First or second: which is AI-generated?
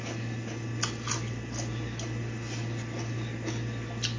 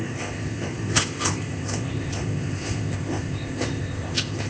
second